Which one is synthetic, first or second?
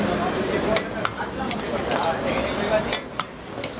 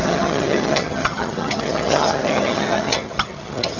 second